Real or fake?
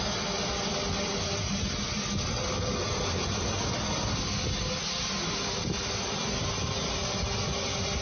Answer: real